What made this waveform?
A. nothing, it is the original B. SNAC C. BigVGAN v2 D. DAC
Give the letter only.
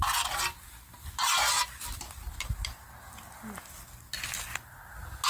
A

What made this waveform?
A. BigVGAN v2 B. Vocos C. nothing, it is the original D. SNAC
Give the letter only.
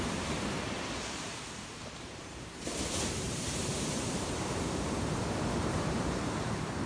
A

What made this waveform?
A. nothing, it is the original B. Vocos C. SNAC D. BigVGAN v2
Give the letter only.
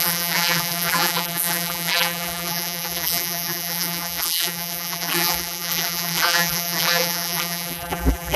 D